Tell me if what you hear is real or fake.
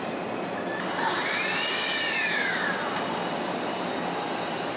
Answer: real